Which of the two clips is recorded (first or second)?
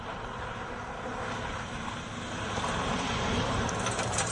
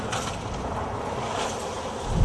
second